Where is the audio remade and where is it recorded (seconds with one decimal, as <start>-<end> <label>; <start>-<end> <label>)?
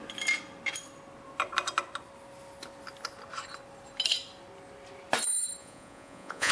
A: 0.0-5.6 recorded; 5.6-6.5 remade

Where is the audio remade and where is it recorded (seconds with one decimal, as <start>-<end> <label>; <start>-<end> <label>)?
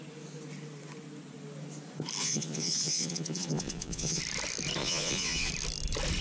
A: 0.0-2.2 recorded; 2.2-4.2 remade; 4.2-4.8 recorded; 4.8-5.5 remade; 5.5-6.2 recorded